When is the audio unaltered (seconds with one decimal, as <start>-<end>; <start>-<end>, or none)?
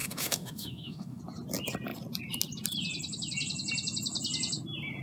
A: 1.2-5.0